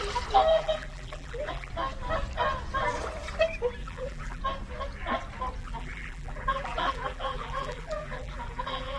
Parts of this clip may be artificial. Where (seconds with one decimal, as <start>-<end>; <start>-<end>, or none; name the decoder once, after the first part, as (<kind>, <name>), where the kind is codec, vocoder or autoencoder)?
0.5-1.7 (vocoder, BigVGAN v2); 3.8-4.4; 5.6-9.0